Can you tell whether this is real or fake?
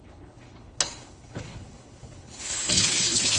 fake